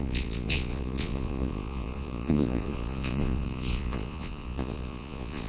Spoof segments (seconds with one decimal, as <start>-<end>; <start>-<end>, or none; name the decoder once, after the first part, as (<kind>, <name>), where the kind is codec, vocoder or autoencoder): 0.0-5.5 (vocoder, Vocos)